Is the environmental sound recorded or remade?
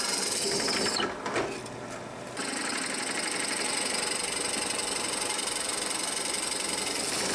recorded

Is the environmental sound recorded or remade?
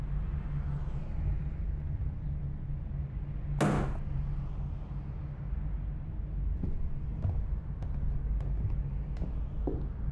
recorded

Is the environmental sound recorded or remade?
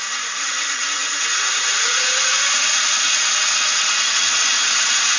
remade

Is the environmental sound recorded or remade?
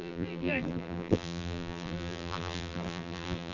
remade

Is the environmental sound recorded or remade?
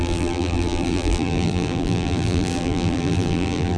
remade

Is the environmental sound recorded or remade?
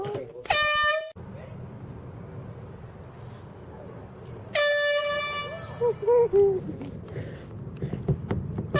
recorded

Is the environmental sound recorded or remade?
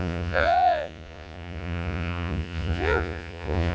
remade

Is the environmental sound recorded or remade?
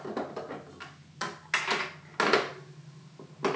recorded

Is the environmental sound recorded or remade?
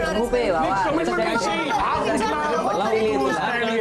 remade